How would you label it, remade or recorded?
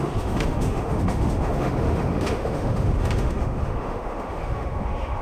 remade